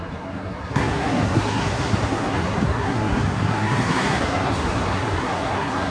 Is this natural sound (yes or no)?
no